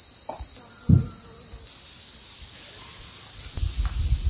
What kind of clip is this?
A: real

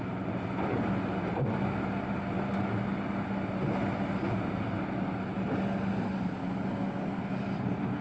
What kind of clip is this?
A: real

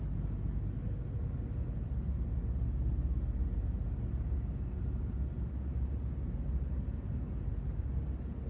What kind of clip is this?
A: real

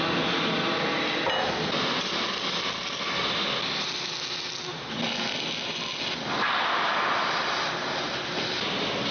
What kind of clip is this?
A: real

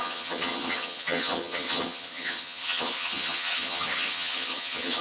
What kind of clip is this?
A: fake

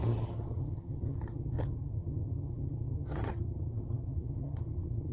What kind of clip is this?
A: fake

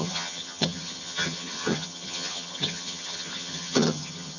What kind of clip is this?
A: fake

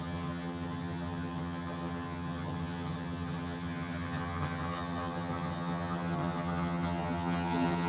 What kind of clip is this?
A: fake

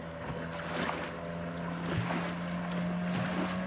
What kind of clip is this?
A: real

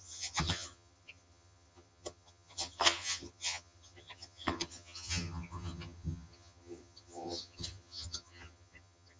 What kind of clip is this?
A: fake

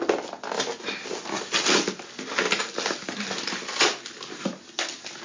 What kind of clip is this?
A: real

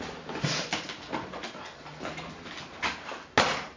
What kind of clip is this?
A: real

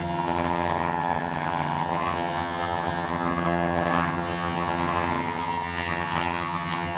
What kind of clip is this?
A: fake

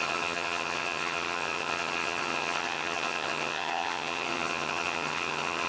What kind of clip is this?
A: fake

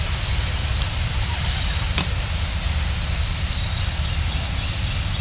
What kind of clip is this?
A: real